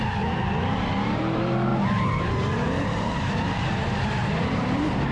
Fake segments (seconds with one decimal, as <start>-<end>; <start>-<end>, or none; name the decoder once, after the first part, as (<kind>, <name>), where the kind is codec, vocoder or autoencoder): 0.0-5.1 (vocoder, BigVGAN v2)